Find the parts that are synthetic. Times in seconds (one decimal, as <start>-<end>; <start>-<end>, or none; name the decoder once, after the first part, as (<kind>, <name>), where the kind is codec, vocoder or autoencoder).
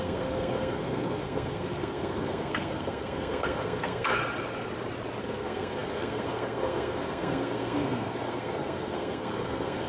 0.0-4.2 (codec, SNAC); 5.2-9.9